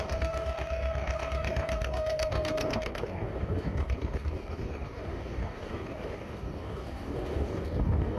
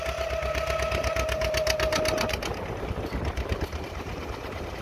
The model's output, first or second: first